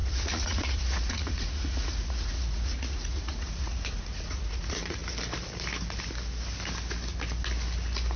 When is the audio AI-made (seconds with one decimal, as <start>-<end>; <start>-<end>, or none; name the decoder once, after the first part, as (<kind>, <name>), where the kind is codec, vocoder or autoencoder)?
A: 0.0-5.0 (vocoder, Vocos)